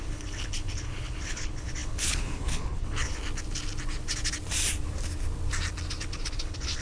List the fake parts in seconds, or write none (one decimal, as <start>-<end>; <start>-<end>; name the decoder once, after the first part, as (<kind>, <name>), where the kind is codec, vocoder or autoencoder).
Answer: 0.0-3.2 (codec, HILCodec); 6.0-6.8